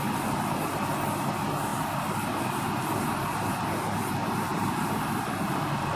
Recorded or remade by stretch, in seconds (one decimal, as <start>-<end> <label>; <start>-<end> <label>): 0.0-4.5 recorded; 4.5-5.6 remade; 5.6-6.0 recorded